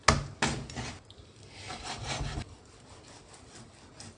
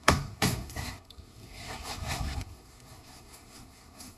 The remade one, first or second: second